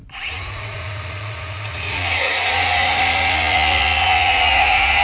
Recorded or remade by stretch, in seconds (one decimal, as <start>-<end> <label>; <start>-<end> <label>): 0.0-5.0 remade